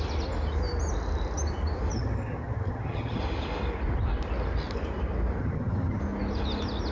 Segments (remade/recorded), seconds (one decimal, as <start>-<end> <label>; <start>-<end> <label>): 0.0-1.9 recorded; 1.9-3.2 remade; 3.2-5.4 recorded; 5.4-6.0 remade; 6.0-6.9 recorded